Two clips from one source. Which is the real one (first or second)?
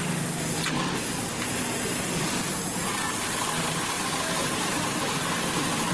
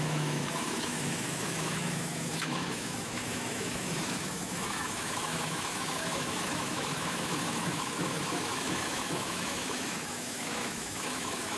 first